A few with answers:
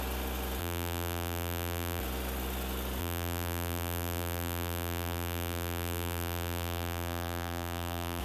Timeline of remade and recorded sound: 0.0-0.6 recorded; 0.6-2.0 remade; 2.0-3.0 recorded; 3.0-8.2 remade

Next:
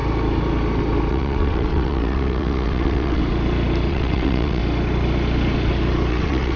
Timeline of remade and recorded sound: 0.0-1.1 recorded; 1.1-3.2 remade; 3.2-3.9 recorded; 3.9-4.6 remade; 4.6-6.1 recorded; 6.1-6.6 remade

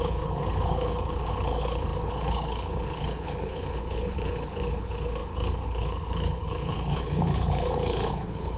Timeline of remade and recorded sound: 0.0-8.6 remade

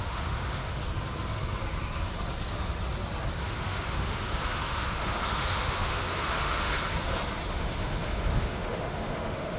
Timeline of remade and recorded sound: 0.0-0.8 remade; 0.8-3.4 recorded; 3.4-6.7 remade; 6.7-7.4 recorded; 7.4-9.6 remade

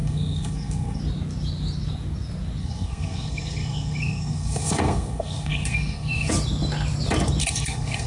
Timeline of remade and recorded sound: 0.0-1.0 remade; 1.0-2.6 recorded; 2.6-6.3 remade; 6.3-7.4 recorded; 7.4-8.1 remade

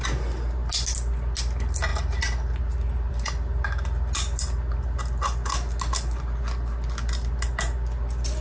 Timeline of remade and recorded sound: 0.0-8.4 recorded